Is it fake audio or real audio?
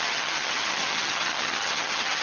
fake